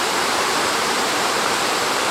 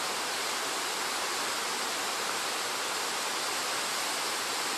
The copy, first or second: first